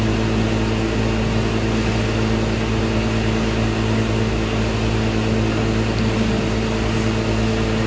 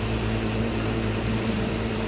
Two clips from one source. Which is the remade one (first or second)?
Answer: second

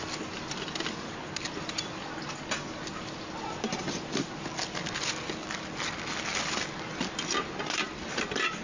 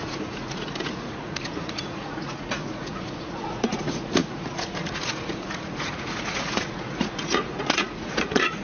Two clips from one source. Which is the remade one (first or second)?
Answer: second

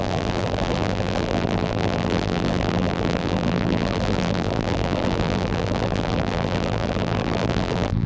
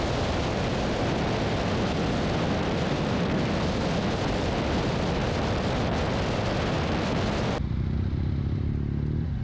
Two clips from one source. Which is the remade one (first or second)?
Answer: first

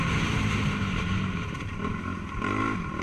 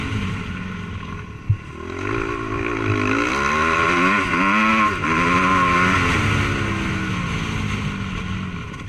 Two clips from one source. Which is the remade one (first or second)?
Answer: first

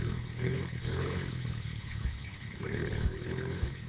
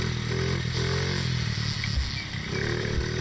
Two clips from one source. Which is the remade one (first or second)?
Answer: first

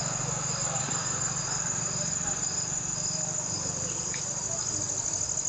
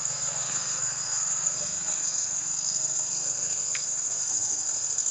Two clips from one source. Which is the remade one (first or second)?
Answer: second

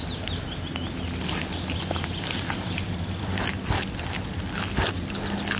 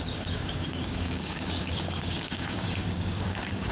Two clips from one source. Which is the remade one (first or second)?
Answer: second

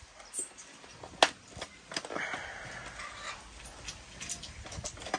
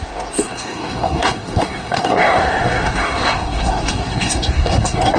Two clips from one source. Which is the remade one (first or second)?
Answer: second